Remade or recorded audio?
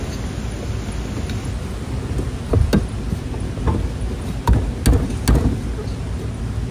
recorded